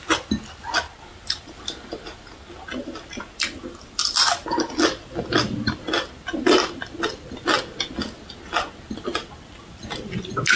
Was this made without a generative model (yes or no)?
yes